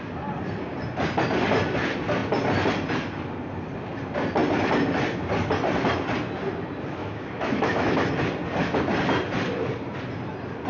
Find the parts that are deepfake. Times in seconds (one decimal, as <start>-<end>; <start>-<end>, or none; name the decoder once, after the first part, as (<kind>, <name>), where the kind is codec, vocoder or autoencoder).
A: 7.0-8.1 (autoencoder, DAC-VAE)